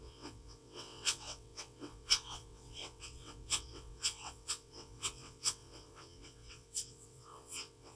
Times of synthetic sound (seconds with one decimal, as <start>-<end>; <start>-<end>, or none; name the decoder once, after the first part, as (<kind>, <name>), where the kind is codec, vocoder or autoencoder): 0.0-8.0 (vocoder, WaveNeXt)